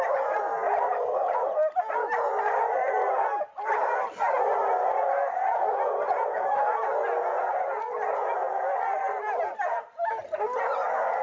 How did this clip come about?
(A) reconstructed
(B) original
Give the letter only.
B